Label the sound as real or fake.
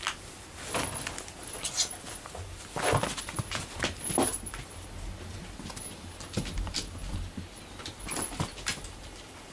real